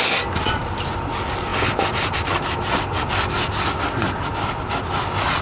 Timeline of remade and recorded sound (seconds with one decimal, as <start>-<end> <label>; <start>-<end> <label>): 0.0-5.4 recorded